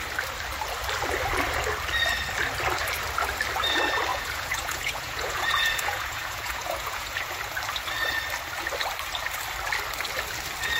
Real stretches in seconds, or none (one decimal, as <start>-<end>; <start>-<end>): 0.0-4.1; 7.4-10.8